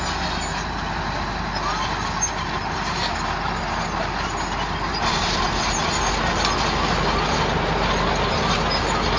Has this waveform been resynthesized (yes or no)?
no